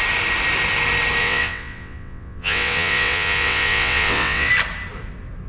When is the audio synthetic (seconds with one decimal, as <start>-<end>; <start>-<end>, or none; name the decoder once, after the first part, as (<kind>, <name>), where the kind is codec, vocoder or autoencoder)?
1.2-4.5 (vocoder, WaveNeXt)